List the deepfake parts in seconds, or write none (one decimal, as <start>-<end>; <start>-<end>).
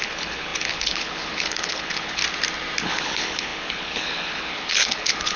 0.0-2.2; 2.8-5.4